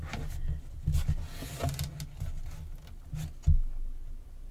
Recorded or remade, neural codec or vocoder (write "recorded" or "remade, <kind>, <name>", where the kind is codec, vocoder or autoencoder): recorded